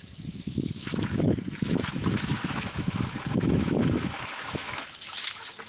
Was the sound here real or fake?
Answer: fake